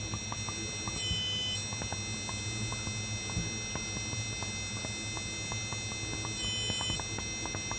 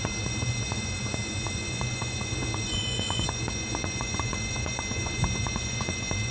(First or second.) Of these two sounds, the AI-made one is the second